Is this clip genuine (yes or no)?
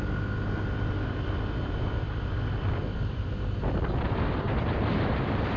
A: no